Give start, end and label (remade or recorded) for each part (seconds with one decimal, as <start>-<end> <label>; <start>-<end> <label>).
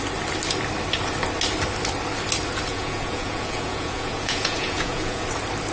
0.0-2.7 recorded; 2.7-5.2 remade; 5.2-5.7 recorded